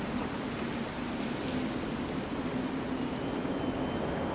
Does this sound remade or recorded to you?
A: recorded